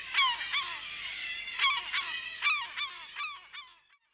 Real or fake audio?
real